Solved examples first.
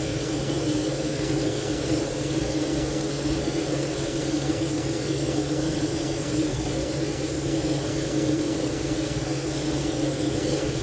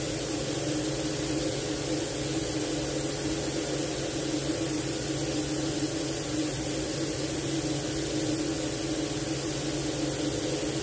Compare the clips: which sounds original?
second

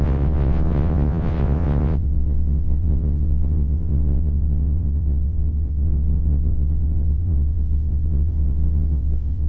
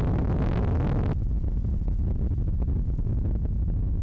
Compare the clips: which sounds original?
second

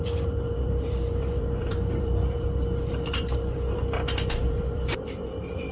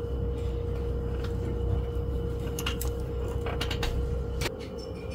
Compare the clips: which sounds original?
second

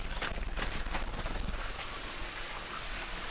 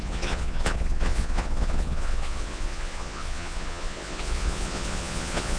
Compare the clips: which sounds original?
first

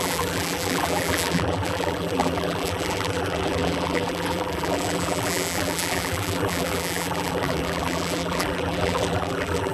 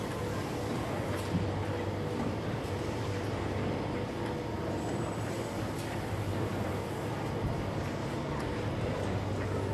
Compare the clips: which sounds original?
second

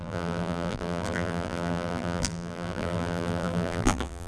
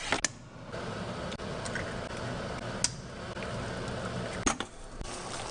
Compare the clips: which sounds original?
second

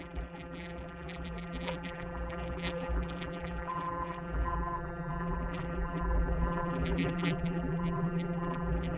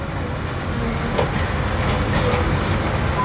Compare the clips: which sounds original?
second